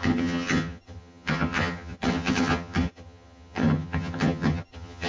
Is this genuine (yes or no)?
no